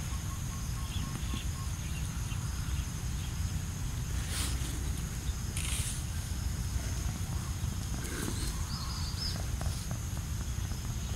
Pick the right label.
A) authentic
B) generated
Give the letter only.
A